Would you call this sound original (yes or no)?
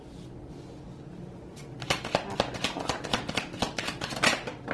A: yes